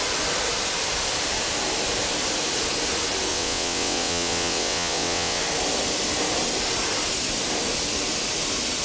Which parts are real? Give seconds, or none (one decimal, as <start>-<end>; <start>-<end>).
0.0-3.3; 5.4-8.8